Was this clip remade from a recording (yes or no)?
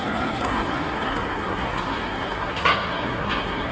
yes